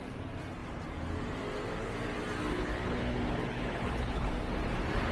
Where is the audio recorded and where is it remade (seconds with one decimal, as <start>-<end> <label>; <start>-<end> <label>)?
0.0-2.5 recorded; 2.5-4.3 remade; 4.3-5.1 recorded